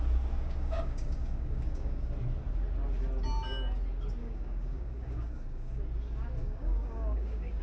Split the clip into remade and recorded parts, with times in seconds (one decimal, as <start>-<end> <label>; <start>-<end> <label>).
0.0-0.4 recorded; 0.4-2.1 remade; 2.1-4.2 recorded; 4.2-5.8 remade; 5.8-6.4 recorded; 6.4-7.6 remade